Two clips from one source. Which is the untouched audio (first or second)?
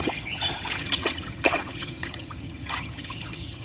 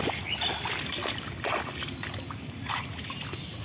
second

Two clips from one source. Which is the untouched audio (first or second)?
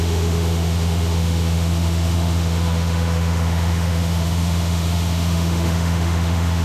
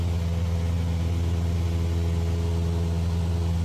second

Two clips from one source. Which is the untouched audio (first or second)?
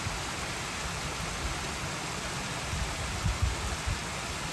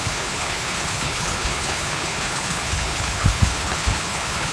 first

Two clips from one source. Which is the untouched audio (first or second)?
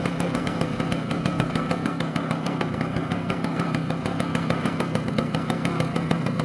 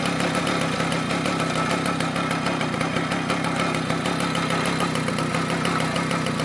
second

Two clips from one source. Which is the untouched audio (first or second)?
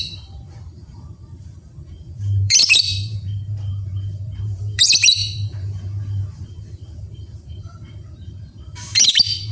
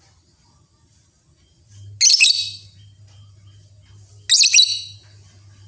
second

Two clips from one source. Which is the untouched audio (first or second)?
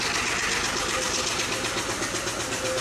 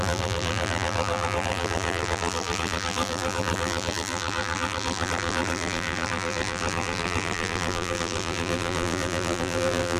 first